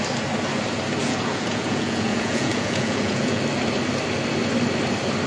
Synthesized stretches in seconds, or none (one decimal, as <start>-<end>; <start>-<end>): 1.0-3.4